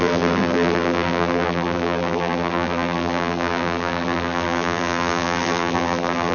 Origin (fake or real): fake